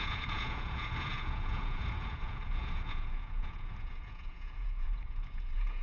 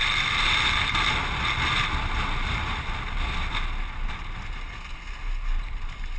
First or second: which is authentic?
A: second